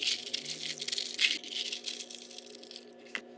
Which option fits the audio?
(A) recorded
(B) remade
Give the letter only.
A